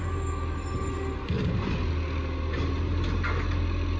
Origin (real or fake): real